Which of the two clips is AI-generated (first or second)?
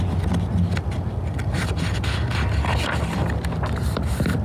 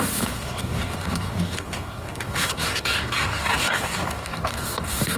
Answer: second